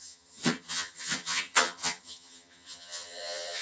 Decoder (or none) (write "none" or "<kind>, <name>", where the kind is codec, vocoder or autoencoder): vocoder, HiFi-GAN